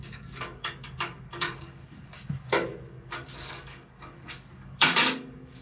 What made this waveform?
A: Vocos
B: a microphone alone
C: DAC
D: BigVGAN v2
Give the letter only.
C